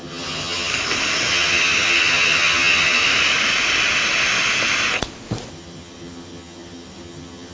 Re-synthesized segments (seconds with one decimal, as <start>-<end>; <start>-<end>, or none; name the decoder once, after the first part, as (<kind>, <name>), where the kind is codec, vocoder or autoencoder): 0.0-0.7 (vocoder, HiFi-GAN); 1.3-3.0; 5.5-7.5